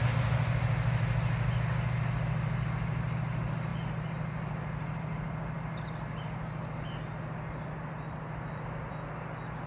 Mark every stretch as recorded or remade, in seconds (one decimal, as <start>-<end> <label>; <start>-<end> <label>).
0.0-9.7 recorded

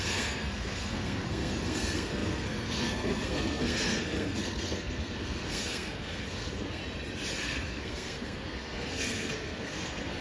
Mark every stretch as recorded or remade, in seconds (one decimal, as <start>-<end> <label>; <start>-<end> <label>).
0.0-6.8 remade; 6.8-7.4 recorded; 7.4-10.2 remade